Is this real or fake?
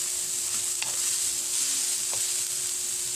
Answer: real